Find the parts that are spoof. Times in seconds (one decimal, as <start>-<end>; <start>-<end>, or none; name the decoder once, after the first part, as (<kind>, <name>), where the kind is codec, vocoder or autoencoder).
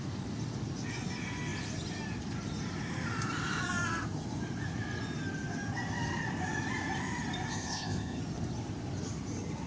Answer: 7.5-8.2 (codec, ZipCodec)